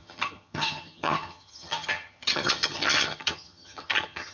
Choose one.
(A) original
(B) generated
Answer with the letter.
B